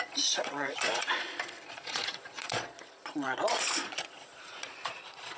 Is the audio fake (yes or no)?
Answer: yes